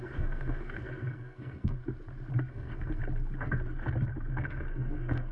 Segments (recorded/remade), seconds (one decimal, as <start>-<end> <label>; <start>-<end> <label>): 0.0-1.8 remade; 1.8-2.5 recorded; 2.5-3.0 remade; 3.0-4.3 recorded; 4.3-5.3 remade

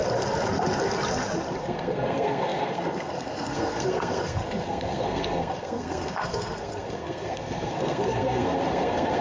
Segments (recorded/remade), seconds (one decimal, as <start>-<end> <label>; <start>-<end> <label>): 0.0-1.6 recorded; 1.6-9.2 remade